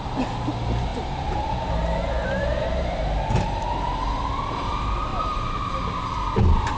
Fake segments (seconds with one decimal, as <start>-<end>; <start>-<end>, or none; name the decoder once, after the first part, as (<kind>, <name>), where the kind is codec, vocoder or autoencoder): 0.9-4.4 (vocoder, BigVGAN v2); 5.1-5.7